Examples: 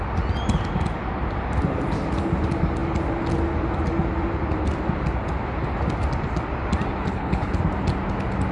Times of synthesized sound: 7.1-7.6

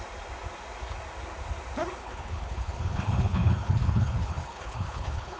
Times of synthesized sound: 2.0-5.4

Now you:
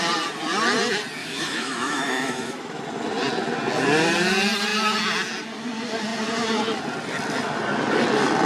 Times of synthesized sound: 1.2-2.8